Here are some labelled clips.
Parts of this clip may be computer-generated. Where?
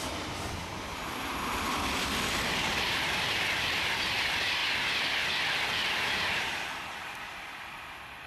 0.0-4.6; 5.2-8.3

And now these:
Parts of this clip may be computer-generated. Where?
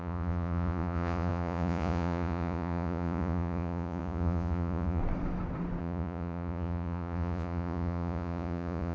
0.0-5.0; 5.8-8.9